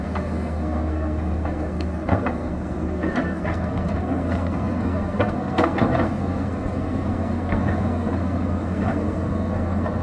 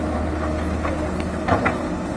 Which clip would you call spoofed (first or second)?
first